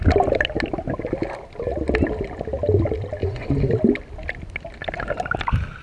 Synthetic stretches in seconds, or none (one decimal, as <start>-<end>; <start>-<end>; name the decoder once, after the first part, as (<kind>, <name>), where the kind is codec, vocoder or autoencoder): 3.2-3.7 (vocoder, Vocos)